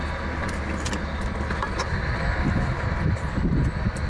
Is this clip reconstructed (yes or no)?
no